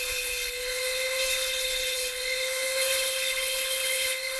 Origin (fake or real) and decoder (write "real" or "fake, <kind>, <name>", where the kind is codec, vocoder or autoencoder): fake, codec, HILCodec